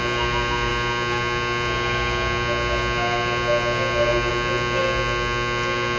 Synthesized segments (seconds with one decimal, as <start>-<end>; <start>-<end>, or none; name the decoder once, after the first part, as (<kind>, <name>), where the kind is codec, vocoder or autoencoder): none